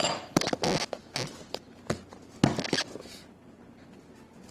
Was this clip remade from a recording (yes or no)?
no